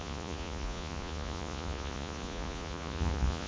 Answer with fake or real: fake